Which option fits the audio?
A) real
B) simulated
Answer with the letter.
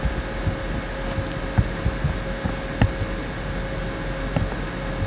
A